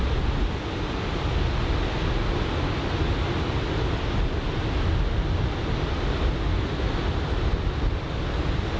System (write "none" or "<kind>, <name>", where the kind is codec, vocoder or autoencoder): none